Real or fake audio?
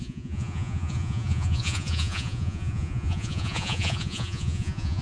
fake